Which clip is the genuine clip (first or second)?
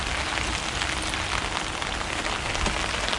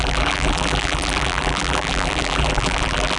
first